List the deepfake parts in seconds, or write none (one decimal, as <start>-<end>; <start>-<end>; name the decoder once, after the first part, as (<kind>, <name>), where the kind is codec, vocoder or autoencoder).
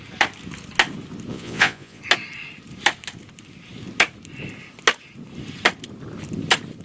1.3-2.0 (vocoder, Vocos)